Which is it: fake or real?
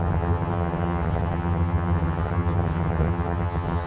fake